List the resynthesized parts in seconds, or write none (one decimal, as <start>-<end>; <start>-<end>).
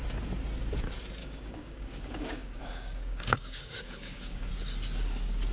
1.2-4.5